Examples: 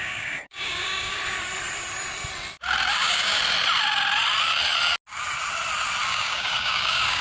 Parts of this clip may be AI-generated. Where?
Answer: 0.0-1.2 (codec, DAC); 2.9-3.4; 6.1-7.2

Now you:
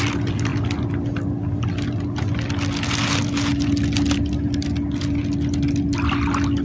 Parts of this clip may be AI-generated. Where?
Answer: none

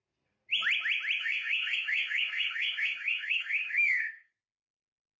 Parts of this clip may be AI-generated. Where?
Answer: 1.2-4.3 (codec, DAC)

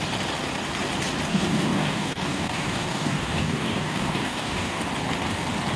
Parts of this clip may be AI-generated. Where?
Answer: 1.3-4.8 (codec, DAC)

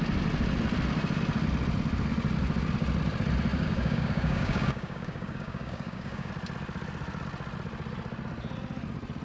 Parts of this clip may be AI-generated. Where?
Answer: 3.5-6.3 (codec, DAC)

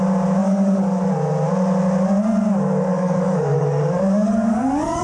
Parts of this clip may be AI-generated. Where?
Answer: 0.4-1.0 (codec, DAC); 2.9-5.0

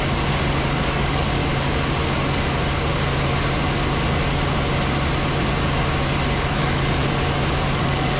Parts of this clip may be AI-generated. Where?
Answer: 0.0-1.4 (codec, DAC); 6.3-7.0; 7.7-8.2

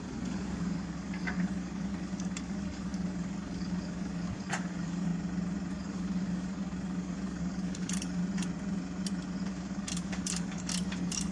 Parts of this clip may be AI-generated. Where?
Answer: 0.0-5.1 (codec, DAC); 5.7-8.2; 9.5-11.3